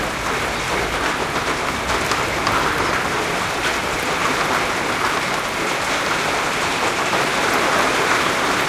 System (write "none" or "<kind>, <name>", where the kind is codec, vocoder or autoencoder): none